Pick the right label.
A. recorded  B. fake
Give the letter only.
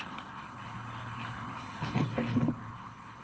B